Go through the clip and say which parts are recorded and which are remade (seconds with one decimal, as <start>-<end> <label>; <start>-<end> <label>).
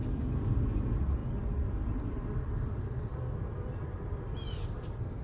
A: 0.0-5.2 recorded